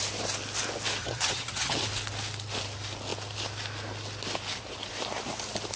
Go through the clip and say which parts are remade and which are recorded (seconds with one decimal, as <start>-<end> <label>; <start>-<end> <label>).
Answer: 0.0-1.0 recorded; 1.0-1.8 remade; 1.8-5.8 recorded